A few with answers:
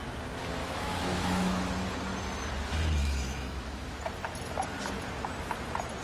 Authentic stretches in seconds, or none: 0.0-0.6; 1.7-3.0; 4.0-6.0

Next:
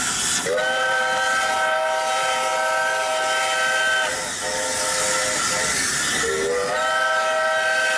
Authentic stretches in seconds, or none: 0.0-8.0

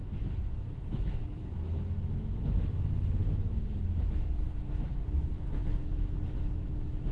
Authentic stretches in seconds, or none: none